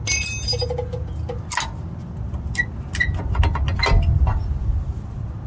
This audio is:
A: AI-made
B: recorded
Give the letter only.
B